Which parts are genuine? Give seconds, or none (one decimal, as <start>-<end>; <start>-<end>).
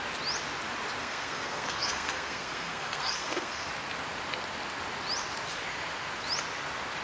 0.0-1.0; 3.7-7.0